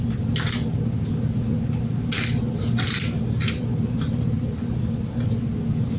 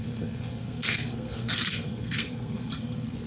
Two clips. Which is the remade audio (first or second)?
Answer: second